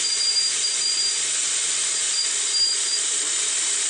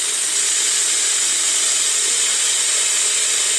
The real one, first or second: second